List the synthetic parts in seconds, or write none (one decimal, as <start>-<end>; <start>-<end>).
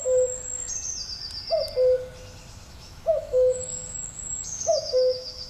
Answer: 2.7-5.5